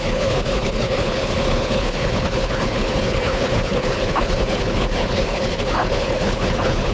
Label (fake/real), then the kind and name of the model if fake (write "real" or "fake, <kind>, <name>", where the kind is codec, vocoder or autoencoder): fake, codec, HILCodec